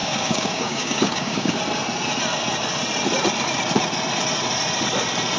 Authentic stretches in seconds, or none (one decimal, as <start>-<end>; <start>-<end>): 1.6-5.4